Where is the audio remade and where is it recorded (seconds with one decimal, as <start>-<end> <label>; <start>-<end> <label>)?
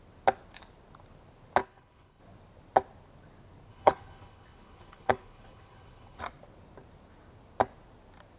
0.0-1.6 recorded; 1.6-2.2 remade; 2.2-3.7 recorded; 3.7-6.2 remade; 6.2-8.4 recorded